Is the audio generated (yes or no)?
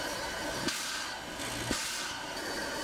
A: no